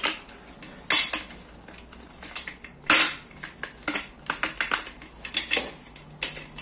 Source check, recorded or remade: recorded